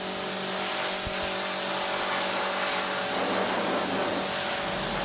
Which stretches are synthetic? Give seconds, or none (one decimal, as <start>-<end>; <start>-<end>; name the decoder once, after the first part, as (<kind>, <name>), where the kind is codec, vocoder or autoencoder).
none